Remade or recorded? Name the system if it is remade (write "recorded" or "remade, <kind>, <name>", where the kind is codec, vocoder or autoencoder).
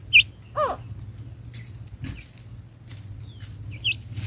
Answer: recorded